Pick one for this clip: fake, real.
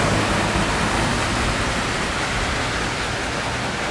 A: real